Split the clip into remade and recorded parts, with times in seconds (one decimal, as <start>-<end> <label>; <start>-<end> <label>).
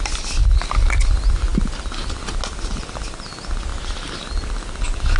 0.0-5.2 recorded